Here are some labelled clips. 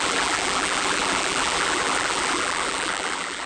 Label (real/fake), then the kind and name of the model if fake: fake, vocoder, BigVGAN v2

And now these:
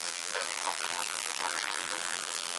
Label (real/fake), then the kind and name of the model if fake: fake, vocoder, BigVGAN v2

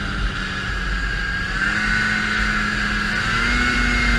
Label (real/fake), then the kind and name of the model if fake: real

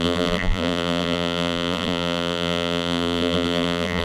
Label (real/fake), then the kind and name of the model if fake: fake, vocoder, BigVGAN v2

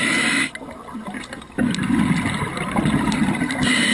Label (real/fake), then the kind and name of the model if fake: real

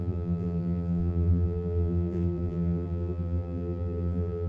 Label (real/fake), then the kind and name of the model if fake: fake, vocoder, BigVGAN v2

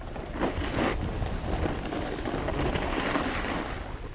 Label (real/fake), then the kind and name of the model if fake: real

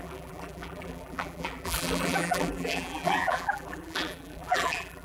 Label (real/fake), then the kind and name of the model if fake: fake, vocoder, BigVGAN v2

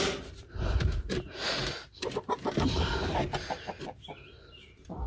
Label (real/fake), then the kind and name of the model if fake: fake, vocoder, BigVGAN v2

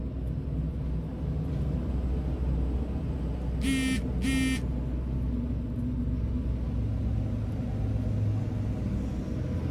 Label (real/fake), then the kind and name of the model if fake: real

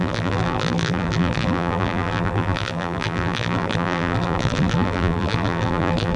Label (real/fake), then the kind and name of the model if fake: fake, vocoder, BigVGAN v2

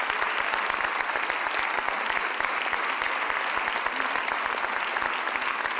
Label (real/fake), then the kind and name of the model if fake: real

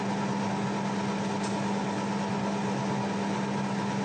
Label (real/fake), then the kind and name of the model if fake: fake, vocoder, BigVGAN v2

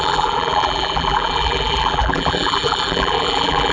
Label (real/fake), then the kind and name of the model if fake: fake, vocoder, BigVGAN v2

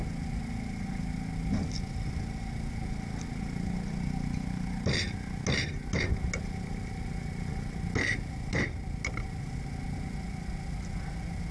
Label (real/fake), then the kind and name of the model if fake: real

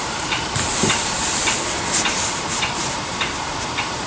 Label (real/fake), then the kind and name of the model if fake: fake, vocoder, BigVGAN v2